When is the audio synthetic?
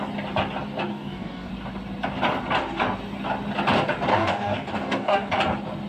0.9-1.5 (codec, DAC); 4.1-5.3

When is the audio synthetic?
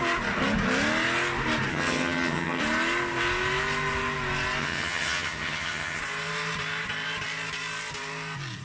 1.7-2.6 (vocoder, HiFi-GAN); 4.6-6.0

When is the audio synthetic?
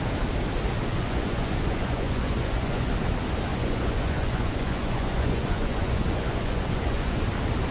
0.9-2.9 (vocoder, Vocos); 3.5-7.2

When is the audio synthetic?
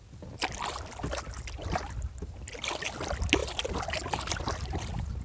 none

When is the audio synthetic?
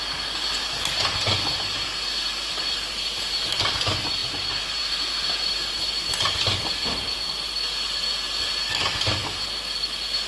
none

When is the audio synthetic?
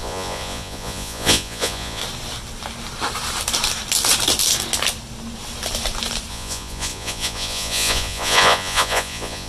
0.0-2.0 (vocoder, Vocos); 6.3-9.5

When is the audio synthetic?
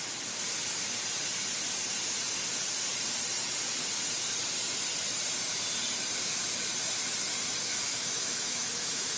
7.7-9.2 (autoencoder, DAC-VAE)